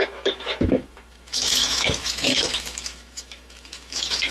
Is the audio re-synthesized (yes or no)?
yes